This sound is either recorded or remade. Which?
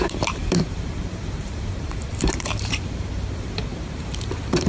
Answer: remade